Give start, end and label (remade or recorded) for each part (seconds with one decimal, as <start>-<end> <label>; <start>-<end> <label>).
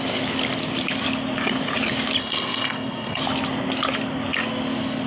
0.0-2.2 recorded; 2.2-3.2 remade; 3.2-5.1 recorded